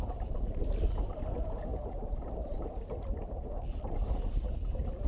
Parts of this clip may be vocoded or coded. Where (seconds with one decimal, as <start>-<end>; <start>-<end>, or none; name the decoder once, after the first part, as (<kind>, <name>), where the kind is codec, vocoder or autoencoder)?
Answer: none

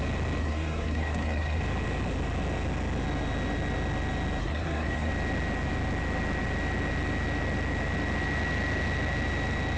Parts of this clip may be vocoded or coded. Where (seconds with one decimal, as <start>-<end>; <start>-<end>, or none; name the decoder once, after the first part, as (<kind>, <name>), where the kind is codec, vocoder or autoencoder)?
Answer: 0.4-1.6 (codec, SNAC); 4.4-5.1

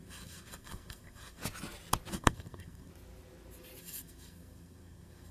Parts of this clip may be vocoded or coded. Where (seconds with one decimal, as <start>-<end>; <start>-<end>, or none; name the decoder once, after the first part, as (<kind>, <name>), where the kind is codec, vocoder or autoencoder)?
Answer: 0.0-1.4 (codec, SNAC); 2.1-2.9; 3.8-5.3

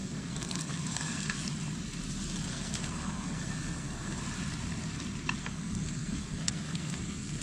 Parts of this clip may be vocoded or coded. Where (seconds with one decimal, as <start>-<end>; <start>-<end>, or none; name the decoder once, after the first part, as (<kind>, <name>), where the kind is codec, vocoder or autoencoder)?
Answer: 0.0-1.4 (codec, SNAC); 2.5-4.2; 5.4-7.4

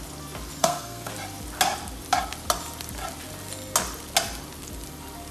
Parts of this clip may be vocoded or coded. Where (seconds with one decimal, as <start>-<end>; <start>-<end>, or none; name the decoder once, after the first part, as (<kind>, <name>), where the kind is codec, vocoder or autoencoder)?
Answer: 0.6-1.1 (codec, SNAC)

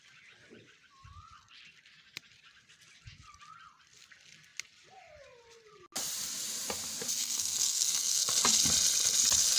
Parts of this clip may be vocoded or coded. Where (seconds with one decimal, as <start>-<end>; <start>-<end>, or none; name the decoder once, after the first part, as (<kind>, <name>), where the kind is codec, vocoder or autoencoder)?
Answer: 7.2-8.2 (codec, SNAC)

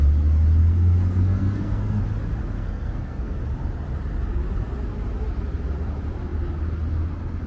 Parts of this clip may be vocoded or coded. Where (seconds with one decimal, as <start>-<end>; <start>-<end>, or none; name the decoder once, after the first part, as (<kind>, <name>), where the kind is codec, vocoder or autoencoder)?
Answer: 0.6-2.0 (codec, SNAC); 2.4-3.4